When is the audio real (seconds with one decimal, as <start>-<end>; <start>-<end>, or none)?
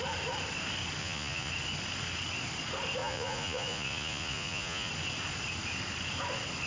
0.0-1.0; 1.5-3.0; 4.9-6.7